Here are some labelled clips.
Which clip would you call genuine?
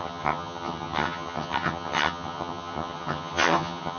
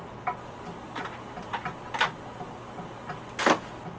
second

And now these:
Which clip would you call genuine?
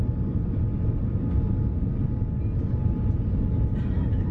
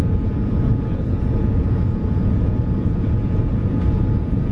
first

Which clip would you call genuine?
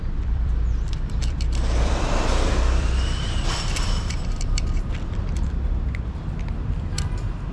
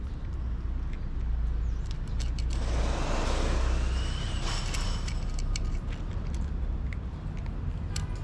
second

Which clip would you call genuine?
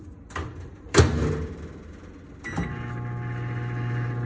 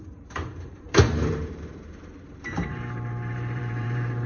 first